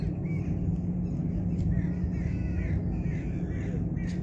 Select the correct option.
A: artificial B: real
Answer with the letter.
B